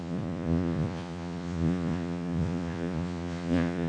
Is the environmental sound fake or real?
fake